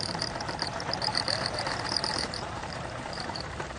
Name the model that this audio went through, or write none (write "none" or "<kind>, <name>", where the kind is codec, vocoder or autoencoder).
vocoder, BigVGAN v2